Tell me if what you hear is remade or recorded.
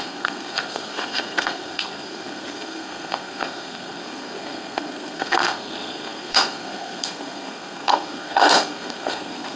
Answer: remade